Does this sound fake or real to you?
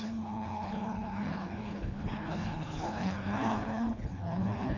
fake